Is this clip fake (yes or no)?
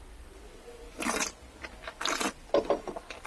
no